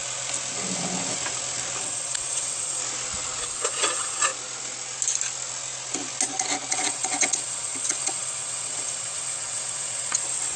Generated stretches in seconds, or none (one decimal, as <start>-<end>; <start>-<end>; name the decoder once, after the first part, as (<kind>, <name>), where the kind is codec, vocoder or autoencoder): 1.8-2.8 (vocoder, WaveNeXt); 3.4-4.3; 6.7-10.6